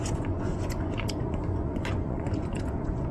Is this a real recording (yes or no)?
no